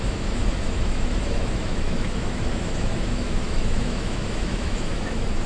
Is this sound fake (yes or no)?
yes